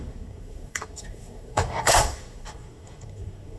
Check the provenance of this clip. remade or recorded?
remade